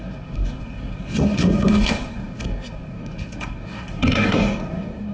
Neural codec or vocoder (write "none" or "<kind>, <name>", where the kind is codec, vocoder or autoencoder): codec, SNAC